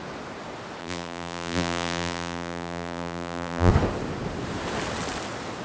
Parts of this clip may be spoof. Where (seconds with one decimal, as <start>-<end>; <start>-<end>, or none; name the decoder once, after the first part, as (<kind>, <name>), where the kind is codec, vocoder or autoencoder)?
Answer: 0.8-3.7 (vocoder, BigVGAN v2)